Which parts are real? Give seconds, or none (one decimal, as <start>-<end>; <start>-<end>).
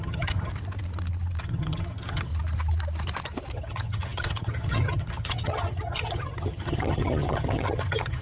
0.5-1.4; 2.3-3.5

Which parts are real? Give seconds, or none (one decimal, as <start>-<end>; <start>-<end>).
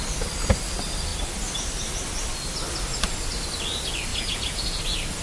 0.0-4.1; 4.8-5.2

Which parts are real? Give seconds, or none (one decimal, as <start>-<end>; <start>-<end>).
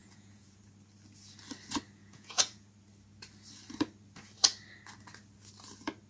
0.6-2.0; 2.7-6.1